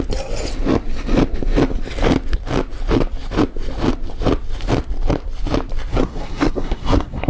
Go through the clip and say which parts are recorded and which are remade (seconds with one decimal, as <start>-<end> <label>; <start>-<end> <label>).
0.0-5.9 recorded; 5.9-7.3 remade